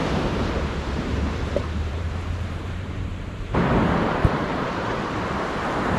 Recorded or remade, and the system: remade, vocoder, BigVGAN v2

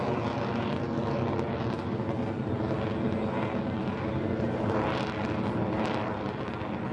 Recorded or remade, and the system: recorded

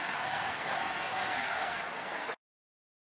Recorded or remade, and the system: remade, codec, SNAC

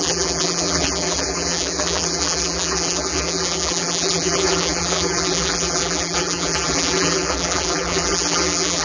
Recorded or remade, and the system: remade, vocoder, BigVGAN v2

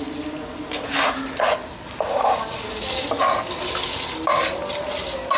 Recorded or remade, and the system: recorded